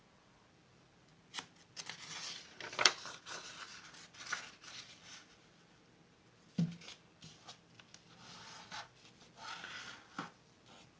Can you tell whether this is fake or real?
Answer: real